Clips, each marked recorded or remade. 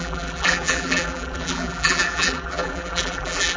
remade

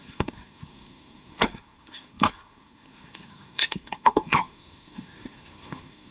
remade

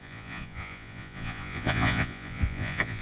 remade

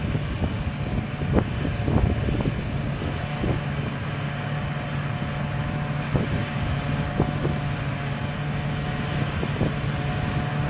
recorded